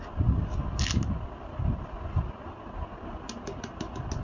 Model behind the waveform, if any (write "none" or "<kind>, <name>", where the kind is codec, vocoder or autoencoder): none